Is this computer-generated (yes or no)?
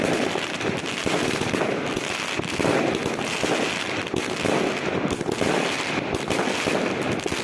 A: no